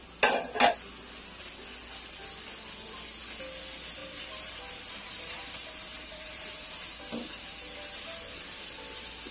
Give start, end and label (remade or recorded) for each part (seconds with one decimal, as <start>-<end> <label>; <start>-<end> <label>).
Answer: 0.0-4.0 recorded; 4.0-8.4 remade; 8.4-9.3 recorded